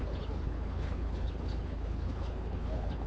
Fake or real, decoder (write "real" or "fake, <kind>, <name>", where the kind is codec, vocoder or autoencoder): fake, codec, HILCodec